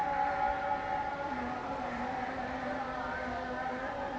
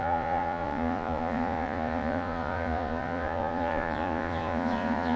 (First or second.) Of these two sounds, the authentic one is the first